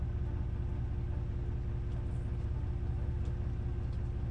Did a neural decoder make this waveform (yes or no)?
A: no